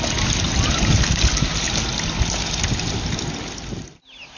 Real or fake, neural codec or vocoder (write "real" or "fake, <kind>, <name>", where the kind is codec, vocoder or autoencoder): real